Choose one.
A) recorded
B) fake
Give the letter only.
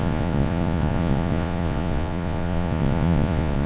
B